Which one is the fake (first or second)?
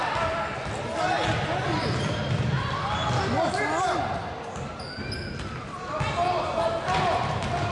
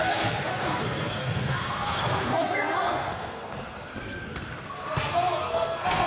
second